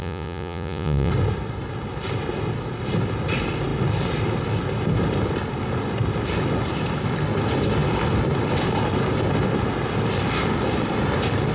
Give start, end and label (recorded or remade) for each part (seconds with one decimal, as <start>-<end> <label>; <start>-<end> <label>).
0.0-1.1 remade; 1.1-11.5 recorded